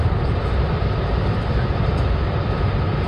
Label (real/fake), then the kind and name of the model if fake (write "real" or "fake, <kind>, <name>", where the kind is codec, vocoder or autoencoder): fake, vocoder, BigVGAN v2